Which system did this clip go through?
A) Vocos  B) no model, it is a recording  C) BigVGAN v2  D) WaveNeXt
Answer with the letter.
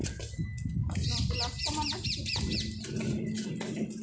B